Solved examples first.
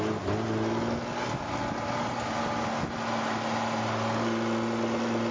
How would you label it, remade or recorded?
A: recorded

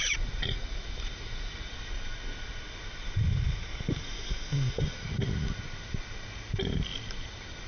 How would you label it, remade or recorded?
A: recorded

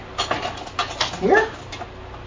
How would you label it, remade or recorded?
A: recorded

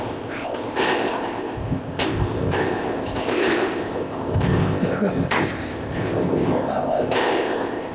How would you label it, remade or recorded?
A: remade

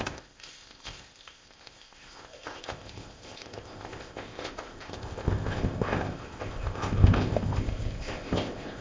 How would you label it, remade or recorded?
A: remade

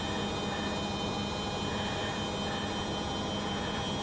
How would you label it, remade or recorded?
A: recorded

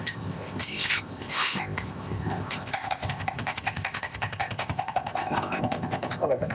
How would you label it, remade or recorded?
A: remade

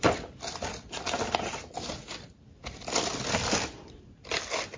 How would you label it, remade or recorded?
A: recorded